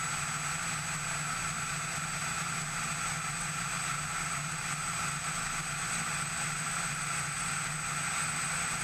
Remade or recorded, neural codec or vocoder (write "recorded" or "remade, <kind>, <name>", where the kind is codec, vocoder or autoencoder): recorded